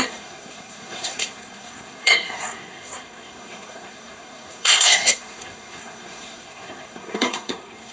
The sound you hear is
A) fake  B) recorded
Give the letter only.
A